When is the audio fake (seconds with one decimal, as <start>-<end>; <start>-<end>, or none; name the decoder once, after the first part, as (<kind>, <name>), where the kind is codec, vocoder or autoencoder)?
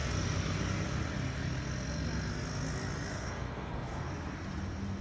3.1-4.1 (codec, SNAC)